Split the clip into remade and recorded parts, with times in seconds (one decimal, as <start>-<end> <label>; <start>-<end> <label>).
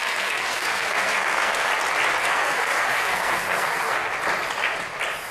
0.0-1.7 remade; 1.7-2.2 recorded; 2.2-4.1 remade; 4.1-5.3 recorded